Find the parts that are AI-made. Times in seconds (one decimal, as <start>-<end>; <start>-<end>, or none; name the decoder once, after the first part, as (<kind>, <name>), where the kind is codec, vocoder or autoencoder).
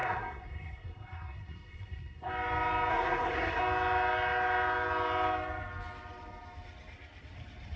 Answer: 0.0-2.3 (codec, SNAC); 2.9-3.6